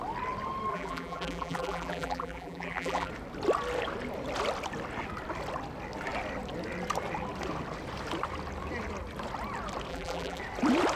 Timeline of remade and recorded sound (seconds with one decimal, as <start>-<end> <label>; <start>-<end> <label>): 0.0-0.7 recorded; 0.7-3.1 remade; 3.1-9.9 recorded; 9.9-10.4 remade; 10.4-11.0 recorded